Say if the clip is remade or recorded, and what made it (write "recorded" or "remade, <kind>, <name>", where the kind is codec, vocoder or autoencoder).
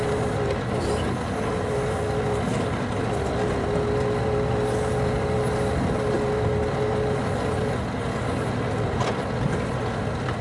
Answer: recorded